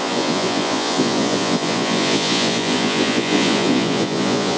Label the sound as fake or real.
fake